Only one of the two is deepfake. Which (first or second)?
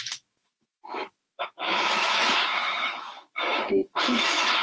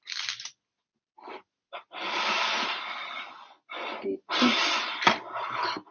first